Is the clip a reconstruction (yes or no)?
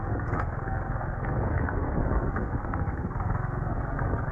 yes